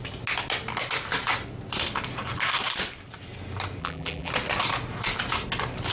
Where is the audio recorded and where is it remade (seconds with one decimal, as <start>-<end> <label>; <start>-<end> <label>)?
0.0-3.8 recorded; 3.8-4.3 remade; 4.3-5.9 recorded